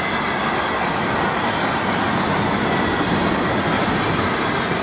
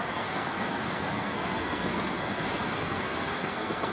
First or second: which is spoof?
second